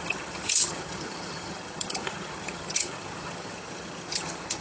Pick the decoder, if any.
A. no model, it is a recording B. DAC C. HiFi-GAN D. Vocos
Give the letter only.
C